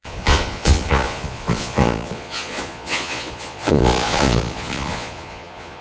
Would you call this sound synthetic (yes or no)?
yes